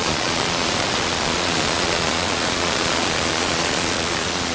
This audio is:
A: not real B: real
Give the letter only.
A